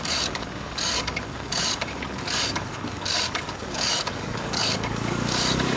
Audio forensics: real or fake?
fake